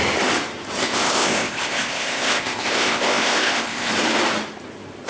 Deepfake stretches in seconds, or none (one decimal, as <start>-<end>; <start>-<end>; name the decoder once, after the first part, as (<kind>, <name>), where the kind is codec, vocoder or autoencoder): 0.8-3.9 (codec, ZipCodec)